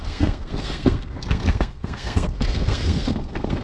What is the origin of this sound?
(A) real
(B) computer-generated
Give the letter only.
B